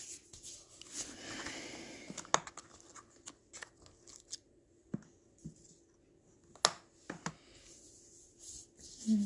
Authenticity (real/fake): real